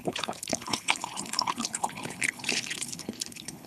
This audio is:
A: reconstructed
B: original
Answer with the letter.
A